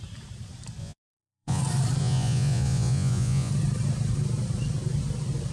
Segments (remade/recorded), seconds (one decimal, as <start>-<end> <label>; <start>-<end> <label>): 0.0-0.8 recorded; 0.8-1.6 remade; 1.6-2.0 recorded; 2.0-3.5 remade; 3.5-5.5 recorded